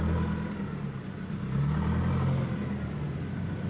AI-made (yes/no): no